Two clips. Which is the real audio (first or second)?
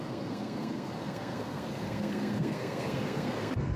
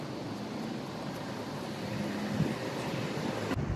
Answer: second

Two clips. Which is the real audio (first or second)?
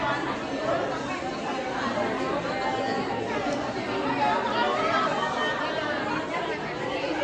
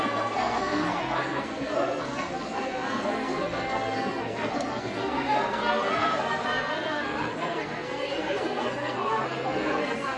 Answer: first